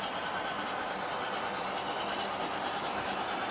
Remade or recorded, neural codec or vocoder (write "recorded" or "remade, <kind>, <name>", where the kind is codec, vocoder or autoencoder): recorded